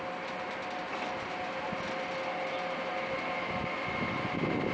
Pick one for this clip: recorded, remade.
recorded